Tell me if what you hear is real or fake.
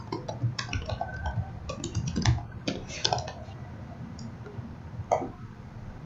real